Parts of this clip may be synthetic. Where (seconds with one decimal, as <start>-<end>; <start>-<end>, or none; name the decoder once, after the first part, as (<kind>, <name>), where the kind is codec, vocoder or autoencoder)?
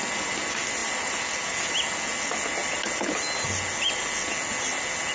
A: none